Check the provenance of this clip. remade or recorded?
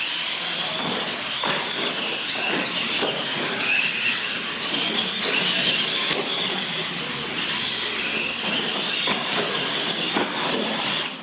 recorded